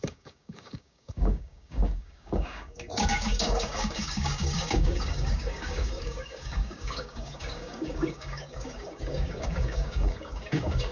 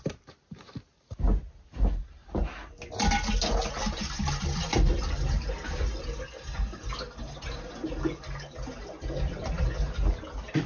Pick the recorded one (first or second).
second